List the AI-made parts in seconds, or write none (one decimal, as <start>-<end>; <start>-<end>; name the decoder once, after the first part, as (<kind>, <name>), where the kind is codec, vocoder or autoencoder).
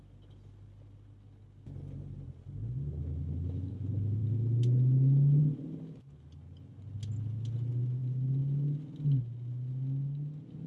none